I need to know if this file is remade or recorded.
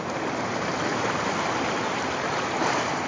remade